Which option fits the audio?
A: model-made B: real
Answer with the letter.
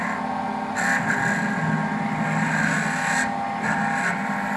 B